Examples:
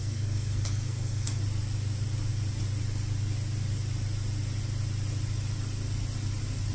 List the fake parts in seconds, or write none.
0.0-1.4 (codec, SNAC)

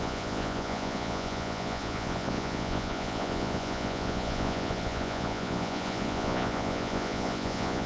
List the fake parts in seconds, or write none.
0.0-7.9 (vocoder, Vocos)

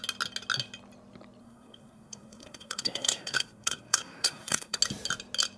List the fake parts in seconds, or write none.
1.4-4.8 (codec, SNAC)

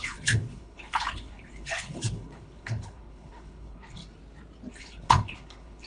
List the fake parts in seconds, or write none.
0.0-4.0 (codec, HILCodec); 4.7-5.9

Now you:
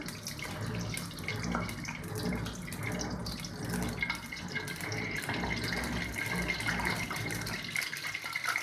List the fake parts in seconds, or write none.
none

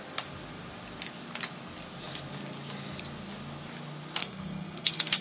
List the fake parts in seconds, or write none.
4.2-5.2 (codec, SNAC)

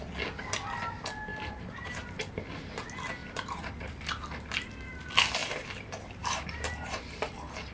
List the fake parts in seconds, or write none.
1.3-2.3 (vocoder, BigVGAN v2); 3.2-3.9; 5.4-7.7

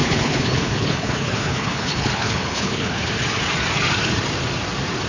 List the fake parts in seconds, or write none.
0.0-3.1 (codec, HILCodec)